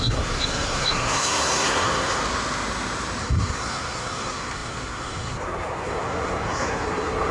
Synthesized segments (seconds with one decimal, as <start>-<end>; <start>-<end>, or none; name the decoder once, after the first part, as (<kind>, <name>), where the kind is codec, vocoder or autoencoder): 0.0-2.2 (codec, SNAC); 3.2-7.3